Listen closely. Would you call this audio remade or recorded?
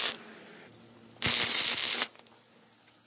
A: recorded